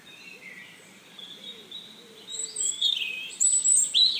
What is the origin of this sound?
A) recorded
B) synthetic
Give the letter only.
B